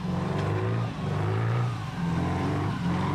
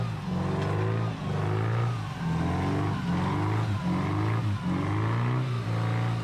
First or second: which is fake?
first